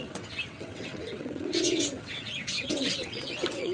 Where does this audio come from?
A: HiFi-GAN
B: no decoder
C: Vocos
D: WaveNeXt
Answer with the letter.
D